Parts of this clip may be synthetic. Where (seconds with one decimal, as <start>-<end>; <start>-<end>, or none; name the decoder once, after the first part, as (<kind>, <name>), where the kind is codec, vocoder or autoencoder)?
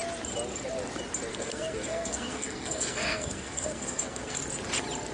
1.3-4.4 (codec, SNAC)